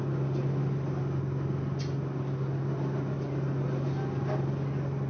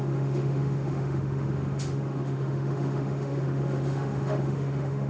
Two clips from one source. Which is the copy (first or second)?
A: second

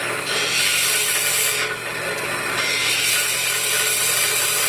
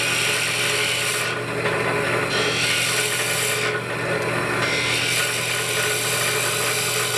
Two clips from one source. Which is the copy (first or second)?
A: first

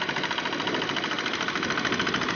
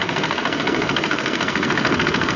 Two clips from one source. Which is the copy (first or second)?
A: second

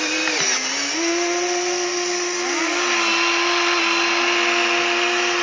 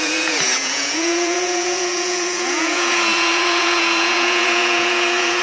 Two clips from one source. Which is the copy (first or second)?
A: second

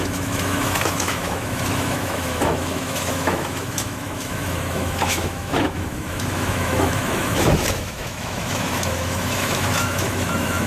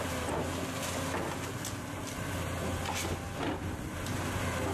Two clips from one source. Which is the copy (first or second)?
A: first